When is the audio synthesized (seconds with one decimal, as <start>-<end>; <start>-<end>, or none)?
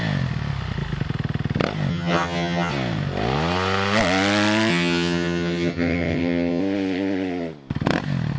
1.9-2.7; 4.7-6.6